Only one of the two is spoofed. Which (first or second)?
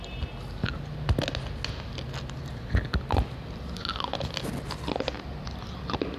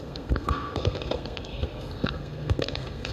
second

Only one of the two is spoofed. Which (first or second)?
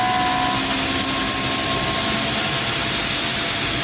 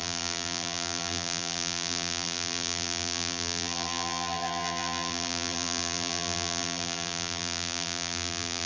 second